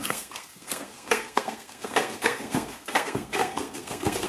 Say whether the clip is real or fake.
fake